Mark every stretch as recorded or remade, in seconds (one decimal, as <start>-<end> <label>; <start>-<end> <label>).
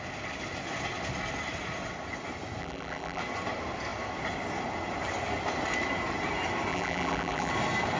0.0-2.6 recorded; 2.6-3.2 remade; 3.2-6.7 recorded; 6.7-7.5 remade; 7.5-8.0 recorded